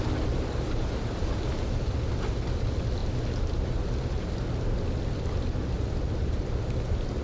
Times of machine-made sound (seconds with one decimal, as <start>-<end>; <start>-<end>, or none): none